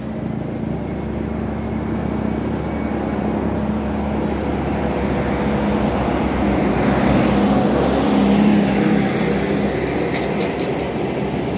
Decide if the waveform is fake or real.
real